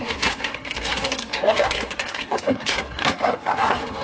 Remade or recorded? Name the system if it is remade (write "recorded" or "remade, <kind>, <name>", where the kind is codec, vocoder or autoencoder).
remade, codec, SNAC